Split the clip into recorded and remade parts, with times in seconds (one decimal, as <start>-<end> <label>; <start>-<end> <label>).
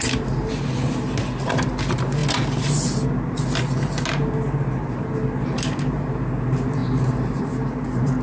0.0-8.2 recorded